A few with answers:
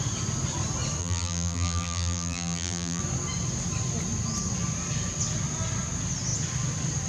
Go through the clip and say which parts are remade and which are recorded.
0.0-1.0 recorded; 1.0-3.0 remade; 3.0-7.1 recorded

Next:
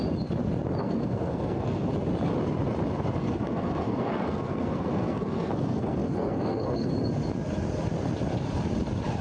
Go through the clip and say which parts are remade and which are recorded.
0.0-0.8 recorded; 0.8-1.9 remade; 1.9-3.2 recorded; 3.2-6.9 remade; 6.9-9.2 recorded